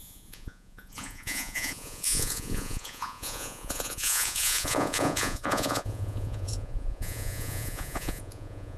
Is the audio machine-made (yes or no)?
yes